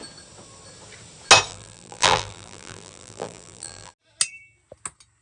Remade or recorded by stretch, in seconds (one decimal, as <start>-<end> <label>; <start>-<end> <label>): 0.0-1.5 recorded; 1.5-3.9 remade; 3.9-5.2 recorded